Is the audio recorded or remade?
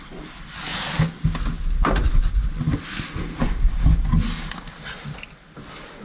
recorded